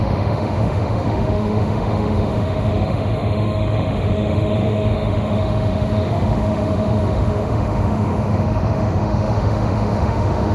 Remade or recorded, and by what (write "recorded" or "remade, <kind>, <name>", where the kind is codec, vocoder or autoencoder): remade, autoencoder, DAC-VAE